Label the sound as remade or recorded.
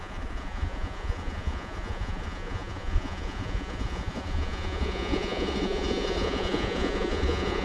remade